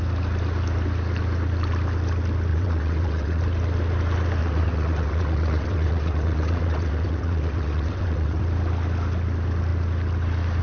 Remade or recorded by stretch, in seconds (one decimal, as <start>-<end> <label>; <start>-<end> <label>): 0.0-2.5 recorded; 2.5-3.4 remade; 3.4-4.4 recorded; 4.4-8.4 remade; 8.4-10.6 recorded